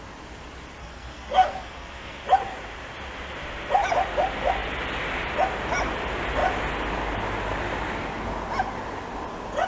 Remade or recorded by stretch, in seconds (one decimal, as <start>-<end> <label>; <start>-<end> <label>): 0.0-0.8 recorded; 0.8-2.2 remade; 2.2-9.7 recorded